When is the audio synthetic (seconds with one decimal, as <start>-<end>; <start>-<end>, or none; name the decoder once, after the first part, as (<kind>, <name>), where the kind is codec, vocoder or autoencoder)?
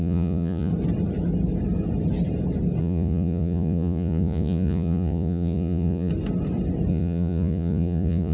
0.0-0.7 (vocoder, Vocos); 2.8-6.1; 6.9-8.3